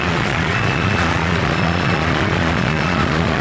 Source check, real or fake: fake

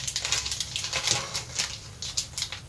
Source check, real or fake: real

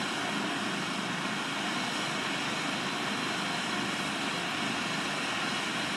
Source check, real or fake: real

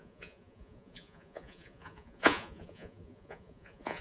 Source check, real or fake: fake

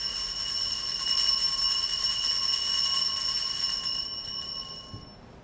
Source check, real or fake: real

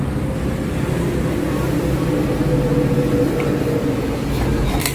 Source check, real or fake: real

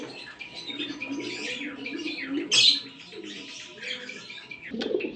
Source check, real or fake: real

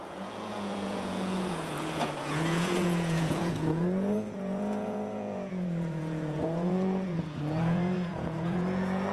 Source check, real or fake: fake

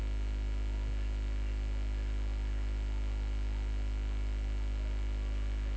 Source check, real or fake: real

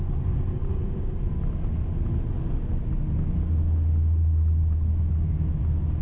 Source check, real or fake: real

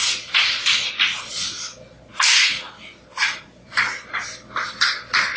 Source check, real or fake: real